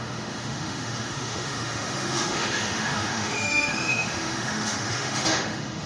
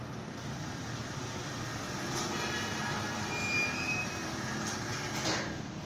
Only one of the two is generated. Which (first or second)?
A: first